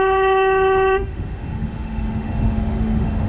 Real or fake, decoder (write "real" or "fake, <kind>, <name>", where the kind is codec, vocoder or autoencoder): fake, autoencoder, DAC-VAE